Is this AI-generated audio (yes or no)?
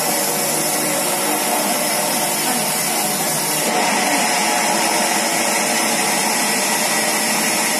no